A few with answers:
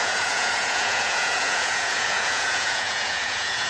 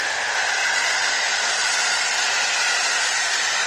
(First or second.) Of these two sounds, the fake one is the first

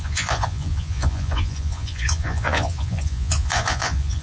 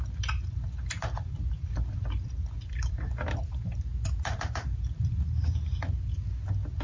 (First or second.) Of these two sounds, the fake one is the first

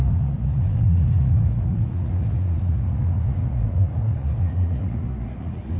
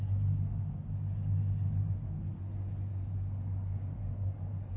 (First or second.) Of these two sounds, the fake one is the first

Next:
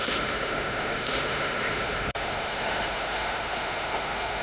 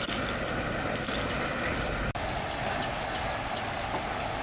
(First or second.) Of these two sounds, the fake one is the first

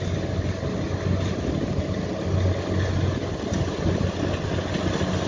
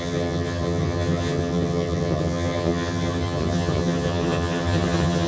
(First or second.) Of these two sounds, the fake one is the second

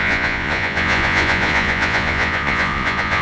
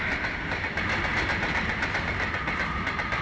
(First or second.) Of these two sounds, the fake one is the first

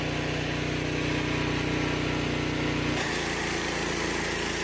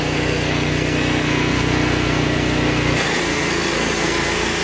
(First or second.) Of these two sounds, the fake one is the second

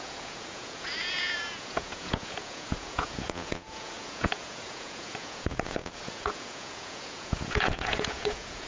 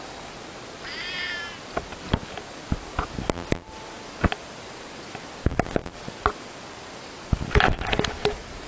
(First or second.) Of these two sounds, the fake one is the first